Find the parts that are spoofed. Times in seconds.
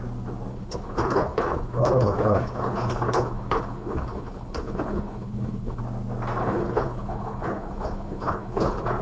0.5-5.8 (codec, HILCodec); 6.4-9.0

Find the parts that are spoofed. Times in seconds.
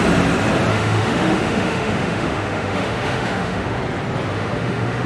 0.7-3.8 (autoencoder, DAC-VAE); 4.3-5.1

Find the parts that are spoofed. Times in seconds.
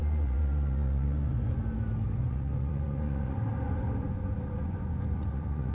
0.0-1.6 (vocoder, Vocos); 2.2-5.7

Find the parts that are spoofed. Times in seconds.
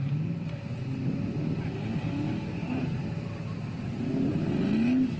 2.6-4.5 (vocoder, BigVGAN v2)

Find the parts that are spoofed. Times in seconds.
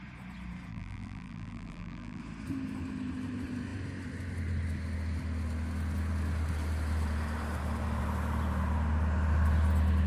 0.7-2.2 (vocoder, BigVGAN v2)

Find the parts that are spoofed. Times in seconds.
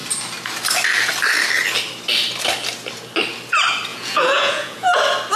3.9-5.0 (vocoder, Vocos)